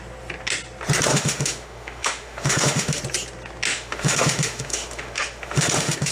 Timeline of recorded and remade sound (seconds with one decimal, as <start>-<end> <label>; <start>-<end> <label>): 0.0-1.1 recorded; 1.1-3.0 remade; 3.0-3.7 recorded; 3.7-6.1 remade